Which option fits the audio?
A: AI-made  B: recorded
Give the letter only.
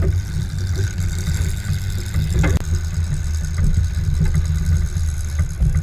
B